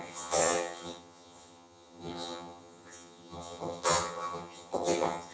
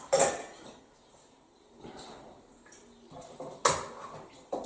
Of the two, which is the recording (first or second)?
second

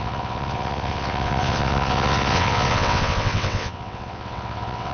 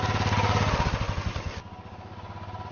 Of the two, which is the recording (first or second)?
second